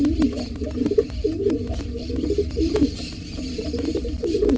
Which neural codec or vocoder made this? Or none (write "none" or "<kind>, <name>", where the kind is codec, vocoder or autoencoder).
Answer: none